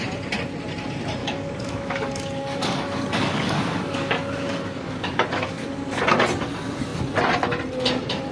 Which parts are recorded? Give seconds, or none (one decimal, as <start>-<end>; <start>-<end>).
0.0-1.2; 6.0-8.3